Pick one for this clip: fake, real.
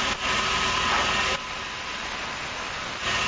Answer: real